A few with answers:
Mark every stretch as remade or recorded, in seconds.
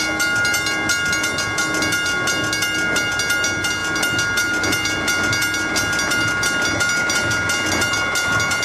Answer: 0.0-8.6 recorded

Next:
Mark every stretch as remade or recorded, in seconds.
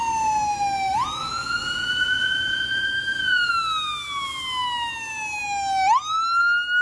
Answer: 0.0-1.2 recorded; 1.2-3.5 remade; 3.5-6.8 recorded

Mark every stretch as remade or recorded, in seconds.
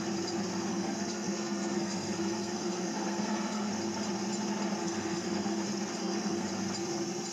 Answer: 0.0-0.7 recorded; 0.7-3.7 remade; 3.7-4.8 recorded; 4.8-5.6 remade; 5.6-6.0 recorded; 6.0-6.5 remade; 6.5-7.3 recorded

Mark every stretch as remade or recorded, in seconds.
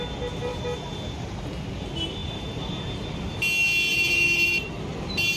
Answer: 0.0-3.9 recorded; 3.9-5.0 remade; 5.0-5.4 recorded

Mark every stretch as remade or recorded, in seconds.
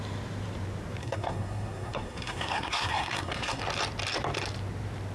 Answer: 0.0-1.0 recorded; 1.0-3.6 remade; 3.6-5.1 recorded